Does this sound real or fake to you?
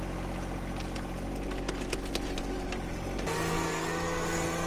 real